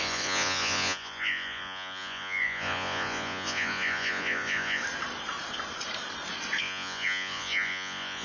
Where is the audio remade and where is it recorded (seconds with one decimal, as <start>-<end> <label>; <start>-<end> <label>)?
0.0-4.8 remade; 4.8-6.6 recorded; 6.6-8.2 remade